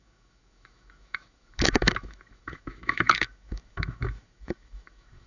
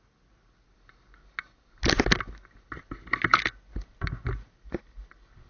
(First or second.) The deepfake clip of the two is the first